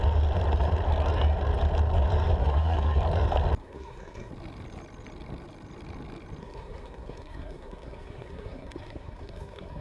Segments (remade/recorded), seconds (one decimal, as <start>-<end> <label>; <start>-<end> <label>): 0.0-2.4 recorded; 2.4-3.0 remade; 3.0-3.6 recorded; 3.6-4.3 remade; 4.3-6.4 recorded; 6.4-9.8 remade